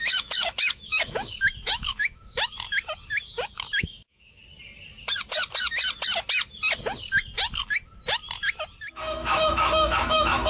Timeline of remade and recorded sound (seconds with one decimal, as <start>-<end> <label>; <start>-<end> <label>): 0.0-4.4 remade; 4.4-8.9 recorded; 8.9-10.5 remade